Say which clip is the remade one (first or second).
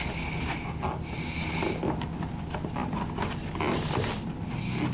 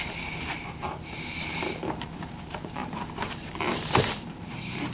second